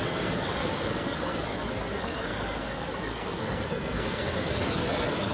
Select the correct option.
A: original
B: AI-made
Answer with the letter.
B